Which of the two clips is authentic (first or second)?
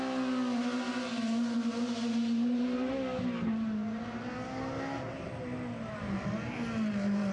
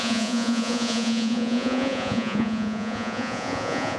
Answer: first